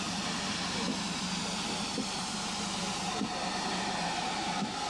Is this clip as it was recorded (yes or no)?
yes